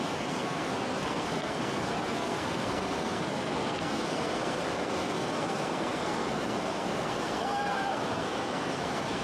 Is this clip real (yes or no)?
no